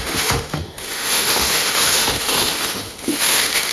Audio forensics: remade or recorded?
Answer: remade